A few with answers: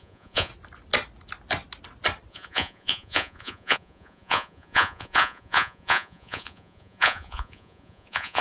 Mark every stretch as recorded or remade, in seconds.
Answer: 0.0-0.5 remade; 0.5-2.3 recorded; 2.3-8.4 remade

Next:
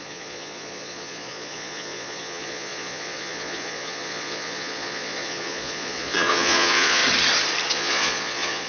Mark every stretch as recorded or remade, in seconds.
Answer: 0.0-7.0 remade; 7.0-7.7 recorded; 7.7-8.7 remade

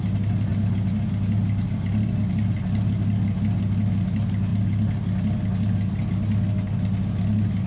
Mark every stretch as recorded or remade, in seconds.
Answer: 0.0-7.7 recorded